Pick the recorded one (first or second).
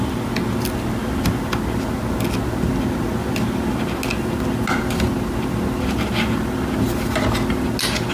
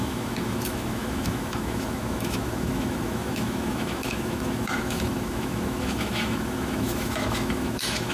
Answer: first